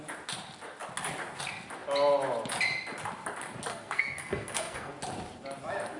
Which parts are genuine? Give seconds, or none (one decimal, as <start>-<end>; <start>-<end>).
0.0-3.7; 4.9-6.0